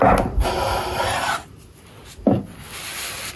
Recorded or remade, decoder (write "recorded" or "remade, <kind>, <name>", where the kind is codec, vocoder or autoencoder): recorded